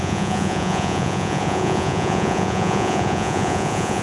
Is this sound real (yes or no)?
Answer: no